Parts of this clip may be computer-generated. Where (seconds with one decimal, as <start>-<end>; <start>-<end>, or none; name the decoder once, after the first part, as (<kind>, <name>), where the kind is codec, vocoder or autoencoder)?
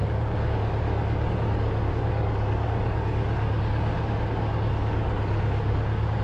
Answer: 0.0-6.2 (codec, DAC)